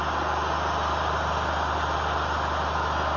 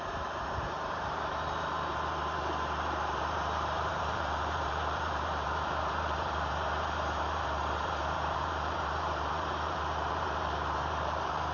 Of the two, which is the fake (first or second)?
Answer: second